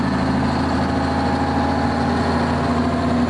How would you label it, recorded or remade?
recorded